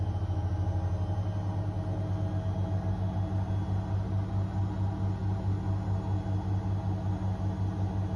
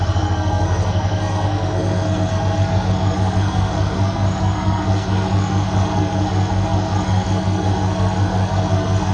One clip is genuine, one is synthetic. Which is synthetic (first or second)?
second